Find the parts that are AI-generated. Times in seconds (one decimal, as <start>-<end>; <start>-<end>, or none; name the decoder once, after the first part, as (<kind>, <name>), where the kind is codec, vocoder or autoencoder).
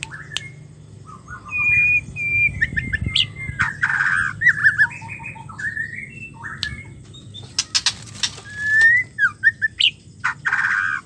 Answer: none